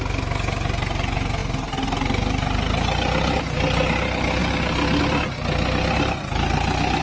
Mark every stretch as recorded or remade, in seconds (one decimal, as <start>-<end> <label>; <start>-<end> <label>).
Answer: 0.0-7.0 recorded